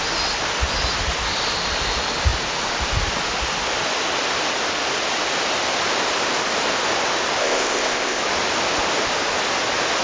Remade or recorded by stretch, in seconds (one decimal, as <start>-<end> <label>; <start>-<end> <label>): 0.0-7.4 recorded; 7.4-8.2 remade; 8.2-10.0 recorded